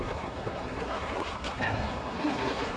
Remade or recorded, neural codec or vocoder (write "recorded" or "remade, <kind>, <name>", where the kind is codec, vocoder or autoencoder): remade, codec, SNAC